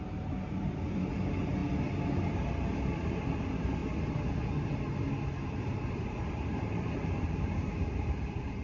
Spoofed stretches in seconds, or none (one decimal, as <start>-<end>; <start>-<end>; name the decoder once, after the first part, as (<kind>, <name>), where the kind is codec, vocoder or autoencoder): 0.0-1.6 (vocoder, BigVGAN v2); 2.1-3.8; 5.9-8.6